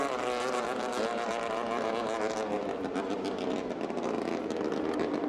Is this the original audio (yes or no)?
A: yes